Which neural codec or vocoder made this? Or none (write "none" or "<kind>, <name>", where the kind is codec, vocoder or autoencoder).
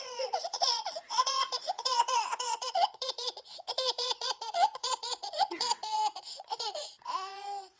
vocoder, WaveNeXt